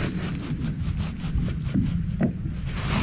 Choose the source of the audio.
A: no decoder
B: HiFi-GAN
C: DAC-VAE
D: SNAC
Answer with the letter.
A